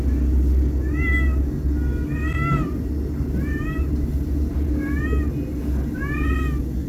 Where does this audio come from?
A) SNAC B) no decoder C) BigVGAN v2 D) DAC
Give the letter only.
B